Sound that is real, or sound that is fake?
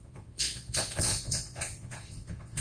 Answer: fake